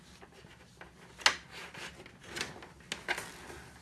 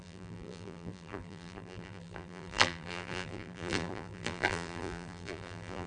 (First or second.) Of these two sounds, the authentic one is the first